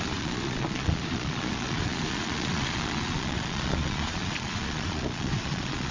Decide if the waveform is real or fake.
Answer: fake